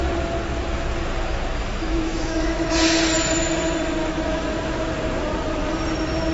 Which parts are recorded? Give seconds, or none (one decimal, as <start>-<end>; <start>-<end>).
0.0-1.6; 2.7-4.0; 4.6-6.3